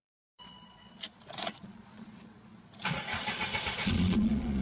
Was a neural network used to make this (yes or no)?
yes